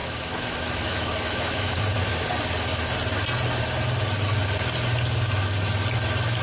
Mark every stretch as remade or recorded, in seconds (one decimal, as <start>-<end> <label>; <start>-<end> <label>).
0.0-1.8 remade; 1.8-6.4 recorded